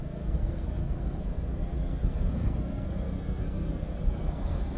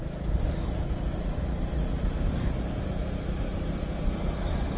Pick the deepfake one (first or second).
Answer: first